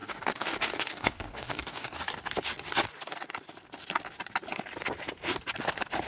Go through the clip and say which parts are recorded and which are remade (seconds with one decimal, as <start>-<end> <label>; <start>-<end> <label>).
0.0-2.0 remade; 2.0-6.1 recorded